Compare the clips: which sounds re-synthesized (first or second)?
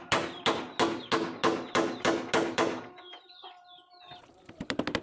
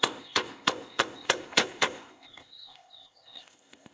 second